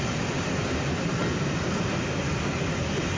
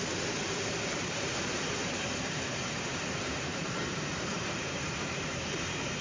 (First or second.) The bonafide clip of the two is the first